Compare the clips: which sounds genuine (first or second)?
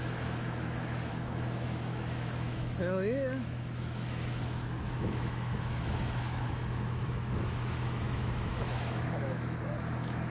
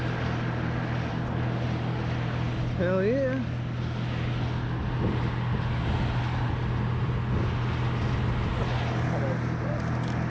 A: second